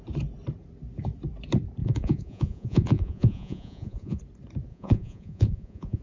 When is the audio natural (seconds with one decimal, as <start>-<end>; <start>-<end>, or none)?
0.0-1.8; 4.2-4.7